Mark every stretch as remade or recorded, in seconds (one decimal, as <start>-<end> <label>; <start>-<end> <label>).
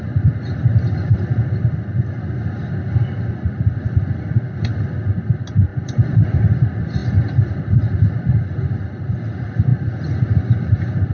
0.0-5.7 recorded; 5.7-6.4 remade; 6.4-7.0 recorded; 7.0-7.5 remade; 7.5-11.1 recorded